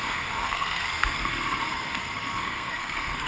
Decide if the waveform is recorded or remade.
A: remade